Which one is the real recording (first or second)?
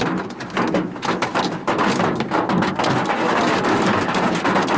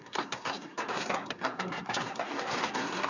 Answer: first